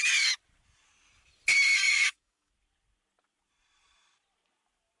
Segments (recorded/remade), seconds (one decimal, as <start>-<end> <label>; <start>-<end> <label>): 0.0-1.8 recorded; 1.8-2.5 remade; 2.5-5.0 recorded